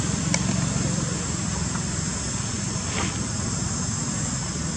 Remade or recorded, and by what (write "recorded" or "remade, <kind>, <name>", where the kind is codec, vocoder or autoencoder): recorded